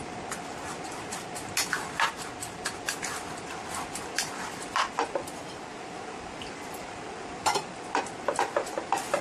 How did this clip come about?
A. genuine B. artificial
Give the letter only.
A